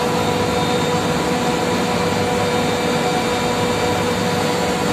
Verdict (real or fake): real